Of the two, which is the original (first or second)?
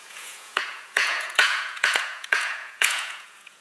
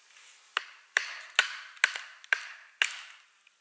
second